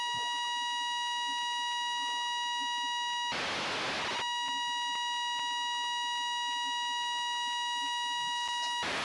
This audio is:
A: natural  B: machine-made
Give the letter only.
A